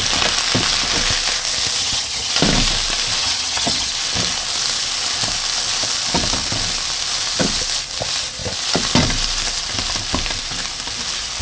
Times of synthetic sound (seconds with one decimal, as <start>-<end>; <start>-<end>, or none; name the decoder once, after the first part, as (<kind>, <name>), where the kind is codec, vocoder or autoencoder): 1.8-2.3 (vocoder, HiFi-GAN); 3.2-3.9